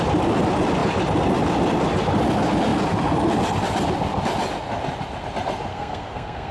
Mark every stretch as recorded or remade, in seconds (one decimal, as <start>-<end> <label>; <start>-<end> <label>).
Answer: 0.0-5.7 recorded; 5.7-6.5 remade